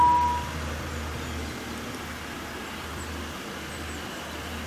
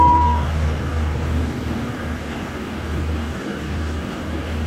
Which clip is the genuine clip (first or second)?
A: first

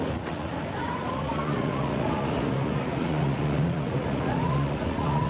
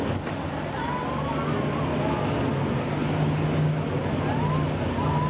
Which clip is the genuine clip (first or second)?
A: second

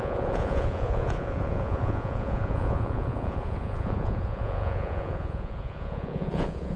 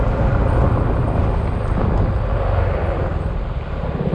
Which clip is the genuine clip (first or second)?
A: second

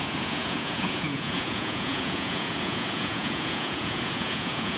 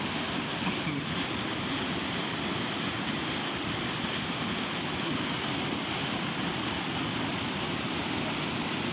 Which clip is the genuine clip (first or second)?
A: second